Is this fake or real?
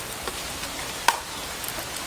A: real